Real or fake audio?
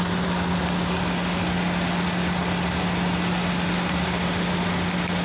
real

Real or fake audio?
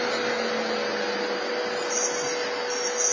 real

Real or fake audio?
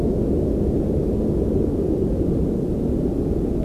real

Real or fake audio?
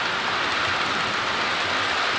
real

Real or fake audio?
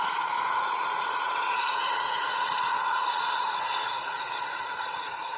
fake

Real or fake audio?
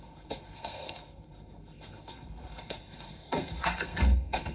fake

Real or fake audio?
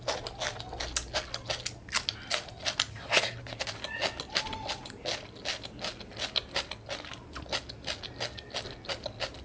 real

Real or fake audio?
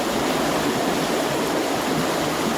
real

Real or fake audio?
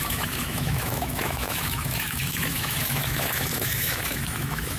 fake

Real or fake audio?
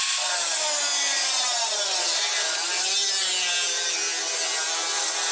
real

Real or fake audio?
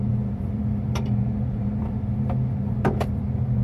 fake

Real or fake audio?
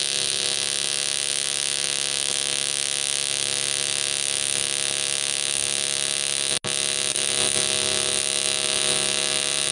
real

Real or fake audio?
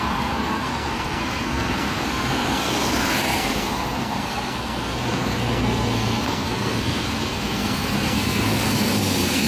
fake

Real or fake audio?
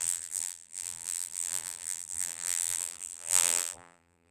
fake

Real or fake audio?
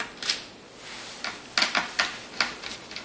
real